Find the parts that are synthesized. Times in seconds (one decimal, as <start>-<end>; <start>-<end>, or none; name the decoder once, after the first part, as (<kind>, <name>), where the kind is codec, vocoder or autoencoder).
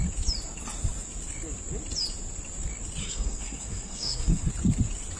3.0-4.5 (codec, SNAC)